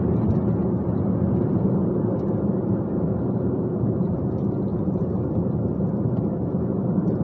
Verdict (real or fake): real